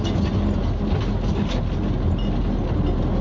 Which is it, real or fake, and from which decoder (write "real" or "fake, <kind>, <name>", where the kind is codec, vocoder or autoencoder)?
real